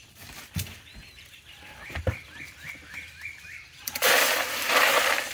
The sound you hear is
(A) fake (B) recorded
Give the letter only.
A